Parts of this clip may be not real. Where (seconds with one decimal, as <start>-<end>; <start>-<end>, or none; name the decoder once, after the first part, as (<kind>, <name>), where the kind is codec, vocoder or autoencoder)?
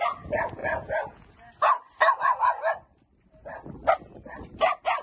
0.6-1.5 (vocoder, Vocos)